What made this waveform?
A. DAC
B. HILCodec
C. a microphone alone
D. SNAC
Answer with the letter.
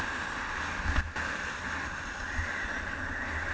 C